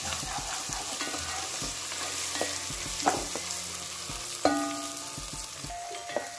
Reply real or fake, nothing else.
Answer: real